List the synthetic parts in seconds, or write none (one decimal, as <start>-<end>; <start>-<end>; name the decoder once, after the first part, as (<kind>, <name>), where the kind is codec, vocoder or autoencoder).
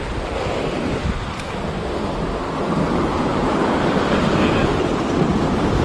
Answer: none